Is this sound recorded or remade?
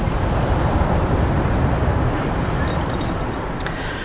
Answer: remade